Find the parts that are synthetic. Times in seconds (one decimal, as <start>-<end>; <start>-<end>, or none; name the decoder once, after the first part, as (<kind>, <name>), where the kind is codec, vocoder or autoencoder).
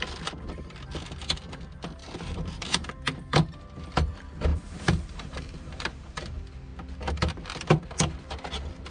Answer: 2.0-2.9 (vocoder, BigVGAN v2); 4.5-6.3